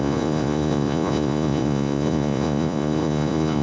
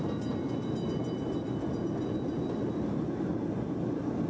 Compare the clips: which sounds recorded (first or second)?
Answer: second